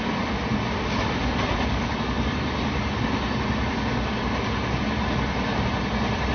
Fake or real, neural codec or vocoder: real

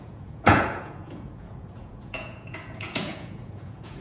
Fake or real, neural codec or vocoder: fake, vocoder, Vocos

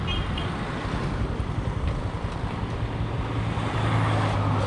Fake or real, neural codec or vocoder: real